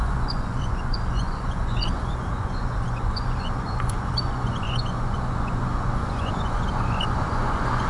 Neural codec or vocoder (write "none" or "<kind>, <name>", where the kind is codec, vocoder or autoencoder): vocoder, Vocos